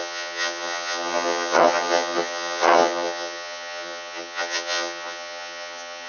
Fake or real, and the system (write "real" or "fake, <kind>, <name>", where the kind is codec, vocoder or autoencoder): fake, vocoder, HiFi-GAN